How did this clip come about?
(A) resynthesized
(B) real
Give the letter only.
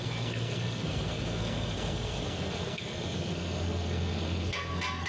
A